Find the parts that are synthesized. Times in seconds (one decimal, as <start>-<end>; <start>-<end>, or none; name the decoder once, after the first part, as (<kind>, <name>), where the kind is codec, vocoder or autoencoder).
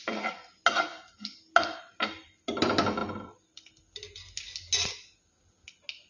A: none